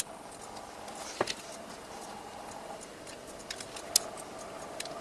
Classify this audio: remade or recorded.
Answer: recorded